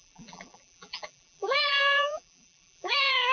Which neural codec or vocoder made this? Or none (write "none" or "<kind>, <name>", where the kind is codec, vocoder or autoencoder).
vocoder, BigVGAN v2